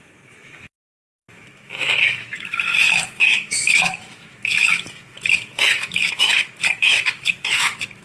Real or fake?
fake